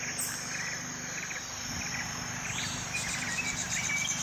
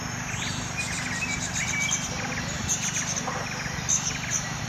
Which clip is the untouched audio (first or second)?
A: second